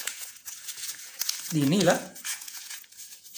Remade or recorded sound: remade